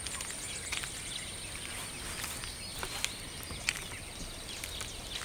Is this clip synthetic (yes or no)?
no